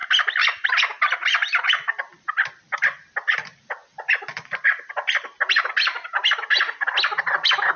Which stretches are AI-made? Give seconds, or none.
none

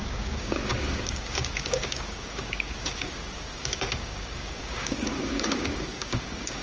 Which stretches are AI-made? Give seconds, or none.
0.0-6.6 (codec, DAC)

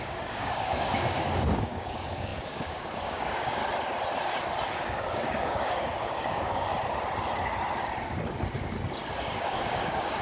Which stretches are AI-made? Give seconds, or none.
0.0-3.6 (codec, DAC); 4.7-6.7; 9.2-10.2

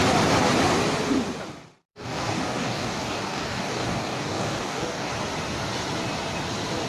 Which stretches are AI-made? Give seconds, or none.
1.9-5.1 (codec, DAC)

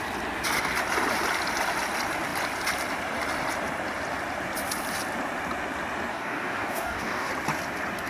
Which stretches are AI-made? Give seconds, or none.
6.1-7.3 (codec, DAC)

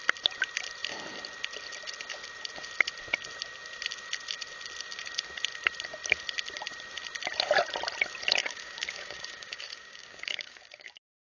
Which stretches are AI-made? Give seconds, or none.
8.4-11.2 (codec, DAC)

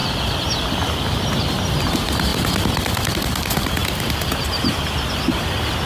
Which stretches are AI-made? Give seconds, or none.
none